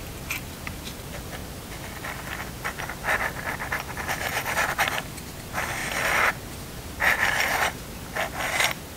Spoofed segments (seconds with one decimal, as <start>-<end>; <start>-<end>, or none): 5.8-6.3